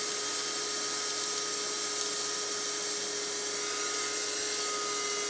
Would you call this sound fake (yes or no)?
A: no